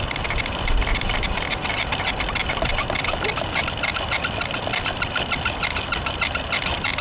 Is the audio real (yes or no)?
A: yes